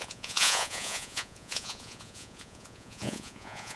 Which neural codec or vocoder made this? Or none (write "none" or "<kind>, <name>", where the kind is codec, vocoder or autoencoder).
vocoder, Vocos